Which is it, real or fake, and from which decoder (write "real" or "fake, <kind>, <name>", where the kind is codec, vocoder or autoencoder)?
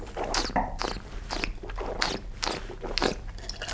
real